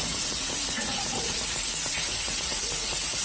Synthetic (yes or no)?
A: yes